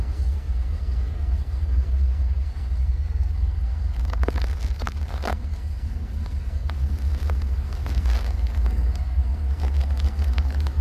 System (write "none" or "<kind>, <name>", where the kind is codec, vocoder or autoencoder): codec, SNAC